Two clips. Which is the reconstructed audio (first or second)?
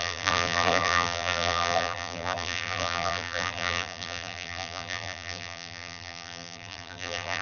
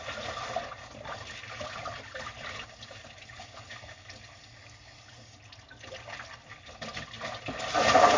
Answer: first